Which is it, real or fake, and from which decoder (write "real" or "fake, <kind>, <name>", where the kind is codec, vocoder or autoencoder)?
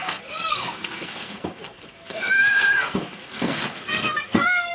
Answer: fake, codec, SNAC